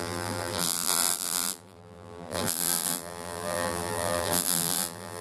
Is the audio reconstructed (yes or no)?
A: yes